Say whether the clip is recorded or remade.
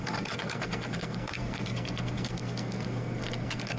remade